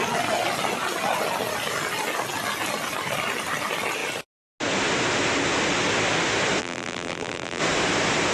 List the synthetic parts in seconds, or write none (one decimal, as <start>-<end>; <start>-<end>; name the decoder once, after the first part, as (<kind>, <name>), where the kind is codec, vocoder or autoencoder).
6.6-7.6 (vocoder, BigVGAN v2)